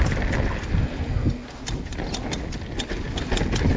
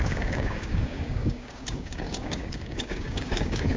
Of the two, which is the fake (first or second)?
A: second